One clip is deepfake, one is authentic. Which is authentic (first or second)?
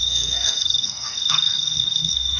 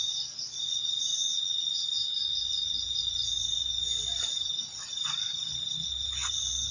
second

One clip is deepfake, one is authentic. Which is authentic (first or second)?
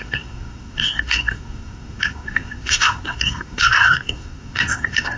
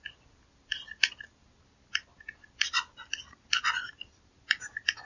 second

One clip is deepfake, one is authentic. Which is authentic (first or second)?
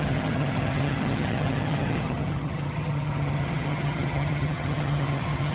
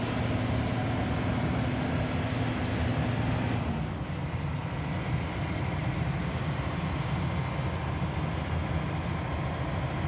second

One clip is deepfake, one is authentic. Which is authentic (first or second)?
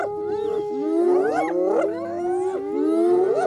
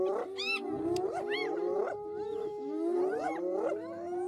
first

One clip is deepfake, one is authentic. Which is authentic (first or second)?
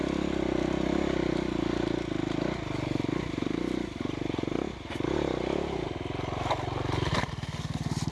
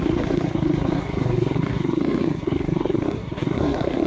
first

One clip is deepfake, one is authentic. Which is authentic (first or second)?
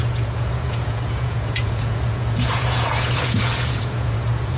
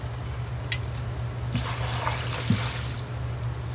second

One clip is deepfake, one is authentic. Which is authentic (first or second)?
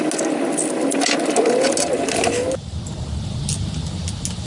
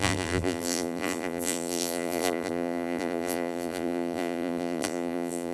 first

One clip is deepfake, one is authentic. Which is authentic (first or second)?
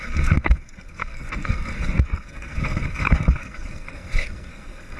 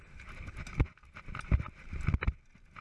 second